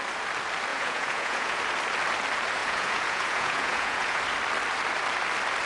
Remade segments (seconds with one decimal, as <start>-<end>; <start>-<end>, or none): 0.7-1.6; 2.6-4.2